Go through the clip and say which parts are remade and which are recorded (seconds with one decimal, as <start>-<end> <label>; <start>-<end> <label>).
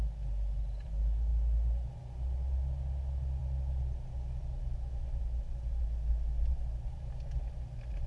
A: 0.0-8.1 recorded